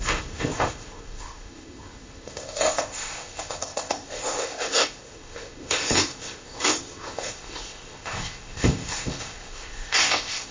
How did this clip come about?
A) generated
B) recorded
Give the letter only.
A